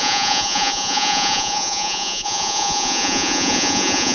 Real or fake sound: fake